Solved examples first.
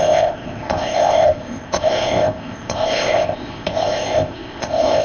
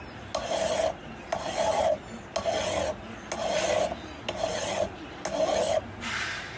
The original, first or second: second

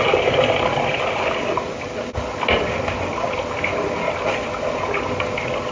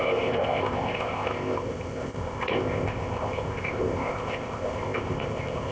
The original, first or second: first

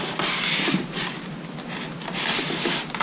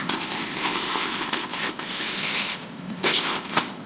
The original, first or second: first